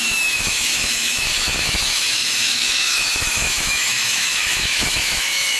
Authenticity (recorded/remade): remade